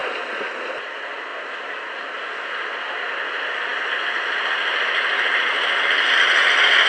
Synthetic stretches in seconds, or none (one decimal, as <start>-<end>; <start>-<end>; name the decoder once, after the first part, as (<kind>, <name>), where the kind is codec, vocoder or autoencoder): 0.0-0.5 (vocoder, BigVGAN v2); 1.3-2.1